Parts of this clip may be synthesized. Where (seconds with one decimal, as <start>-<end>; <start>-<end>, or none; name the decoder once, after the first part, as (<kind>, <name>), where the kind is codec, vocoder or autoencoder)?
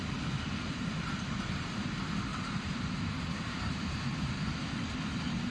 2.3-4.3 (vocoder, BigVGAN v2)